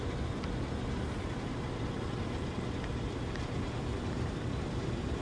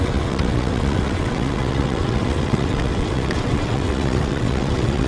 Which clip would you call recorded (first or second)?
first